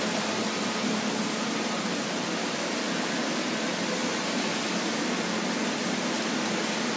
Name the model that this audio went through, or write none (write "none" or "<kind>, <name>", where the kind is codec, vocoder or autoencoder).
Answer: none